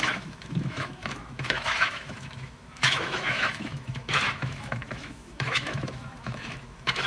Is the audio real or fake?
fake